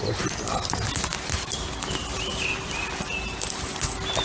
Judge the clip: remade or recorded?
recorded